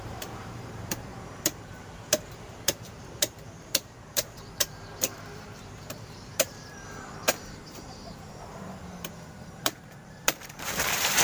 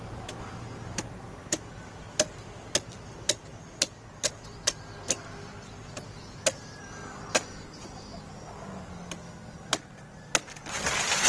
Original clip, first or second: second